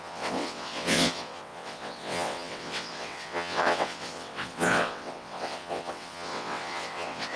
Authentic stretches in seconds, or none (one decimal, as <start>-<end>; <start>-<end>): none